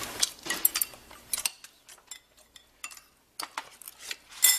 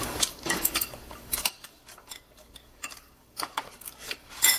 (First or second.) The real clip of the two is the first